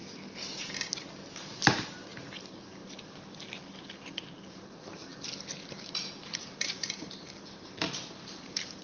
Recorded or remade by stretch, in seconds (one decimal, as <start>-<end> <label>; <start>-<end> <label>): 0.0-2.4 recorded; 2.4-2.8 remade; 2.8-3.6 recorded; 3.6-8.8 remade